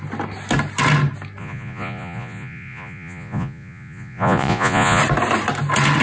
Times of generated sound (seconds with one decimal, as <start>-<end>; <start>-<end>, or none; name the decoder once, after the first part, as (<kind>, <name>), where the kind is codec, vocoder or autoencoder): 1.4-5.0 (vocoder, Vocos)